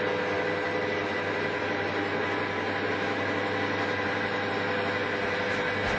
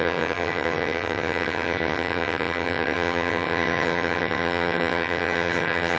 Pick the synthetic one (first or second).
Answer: second